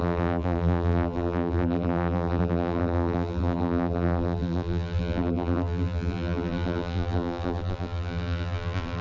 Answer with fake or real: fake